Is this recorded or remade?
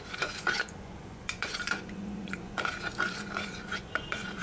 remade